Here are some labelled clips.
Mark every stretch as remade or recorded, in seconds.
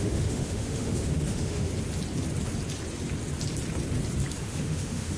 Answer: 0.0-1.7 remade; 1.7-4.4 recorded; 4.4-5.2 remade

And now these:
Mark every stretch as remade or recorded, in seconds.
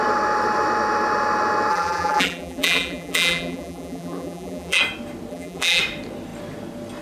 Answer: 0.0-1.7 recorded; 1.7-4.8 remade; 4.8-5.3 recorded; 5.3-5.8 remade; 5.8-7.0 recorded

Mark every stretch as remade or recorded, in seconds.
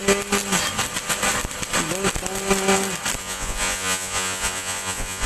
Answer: 0.0-3.2 recorded; 3.2-5.3 remade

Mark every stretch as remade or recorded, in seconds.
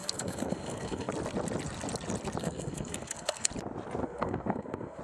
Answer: 0.0-1.1 remade; 1.1-2.4 recorded; 2.4-3.5 remade; 3.5-4.0 recorded; 4.0-5.0 remade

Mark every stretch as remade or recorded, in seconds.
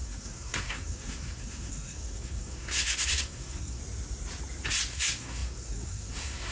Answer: 0.0-3.8 remade; 3.8-4.9 recorded; 4.9-6.5 remade